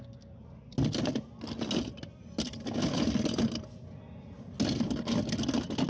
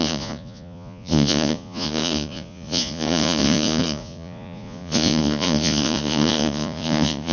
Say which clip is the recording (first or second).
first